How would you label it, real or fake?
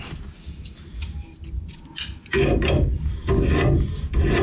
real